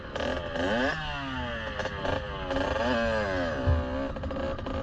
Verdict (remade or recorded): recorded